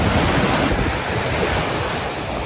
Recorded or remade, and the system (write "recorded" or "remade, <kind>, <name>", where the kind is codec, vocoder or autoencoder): recorded